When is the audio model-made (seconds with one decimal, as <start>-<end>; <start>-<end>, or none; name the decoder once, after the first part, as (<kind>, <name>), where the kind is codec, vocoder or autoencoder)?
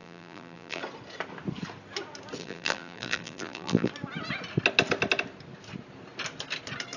0.0-0.8 (vocoder, BigVGAN v2); 2.4-3.9